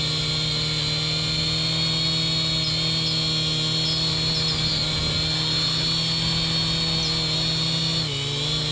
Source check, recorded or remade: recorded